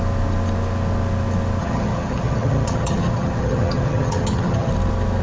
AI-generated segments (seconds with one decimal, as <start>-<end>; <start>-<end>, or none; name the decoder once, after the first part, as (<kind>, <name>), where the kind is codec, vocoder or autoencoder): 1.6-4.7 (vocoder, HiFi-GAN)